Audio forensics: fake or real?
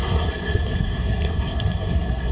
fake